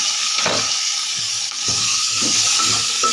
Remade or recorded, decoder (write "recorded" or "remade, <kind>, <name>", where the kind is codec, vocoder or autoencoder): remade, codec, DAC